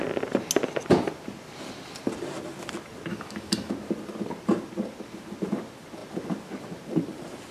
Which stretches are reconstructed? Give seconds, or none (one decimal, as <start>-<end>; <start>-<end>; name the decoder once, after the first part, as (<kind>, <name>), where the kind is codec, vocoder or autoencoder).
3.1-3.7 (autoencoder, DAC-VAE)

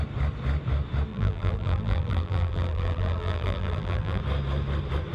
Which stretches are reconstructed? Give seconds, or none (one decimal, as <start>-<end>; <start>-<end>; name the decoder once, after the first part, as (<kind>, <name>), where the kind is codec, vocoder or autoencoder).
1.1-4.2 (vocoder, BigVGAN v2)